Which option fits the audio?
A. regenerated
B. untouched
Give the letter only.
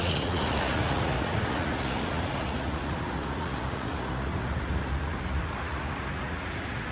A